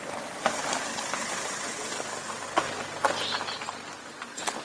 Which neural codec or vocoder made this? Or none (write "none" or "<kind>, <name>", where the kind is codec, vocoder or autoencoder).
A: none